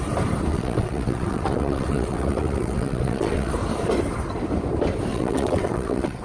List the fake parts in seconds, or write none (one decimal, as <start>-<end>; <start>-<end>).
0.5-3.5; 5.1-6.2